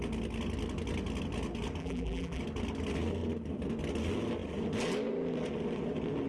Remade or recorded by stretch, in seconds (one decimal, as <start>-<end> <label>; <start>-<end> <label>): 0.0-1.8 recorded; 1.8-2.4 remade; 2.4-6.3 recorded